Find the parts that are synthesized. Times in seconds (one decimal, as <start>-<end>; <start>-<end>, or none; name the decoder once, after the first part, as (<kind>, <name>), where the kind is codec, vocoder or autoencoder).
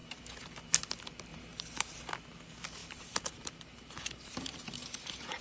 0.0-0.6 (vocoder, BigVGAN v2); 1.3-2.1; 2.8-5.4